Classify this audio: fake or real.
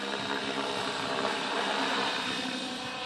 fake